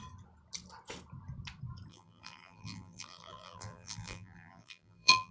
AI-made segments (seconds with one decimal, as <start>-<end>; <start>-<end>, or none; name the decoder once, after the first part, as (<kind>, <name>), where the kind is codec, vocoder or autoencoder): 1.9-5.3 (vocoder, BigVGAN v2)